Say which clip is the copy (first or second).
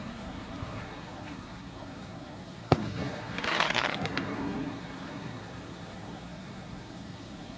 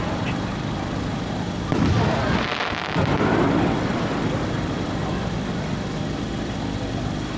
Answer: first